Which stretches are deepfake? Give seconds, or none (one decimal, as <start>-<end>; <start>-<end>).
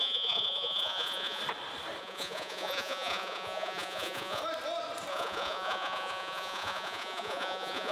0.0-1.4; 2.0-4.4; 5.1-7.9